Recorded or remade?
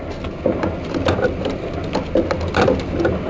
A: recorded